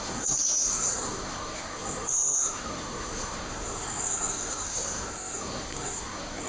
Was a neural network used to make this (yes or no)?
yes